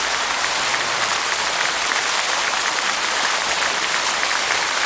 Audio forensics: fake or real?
real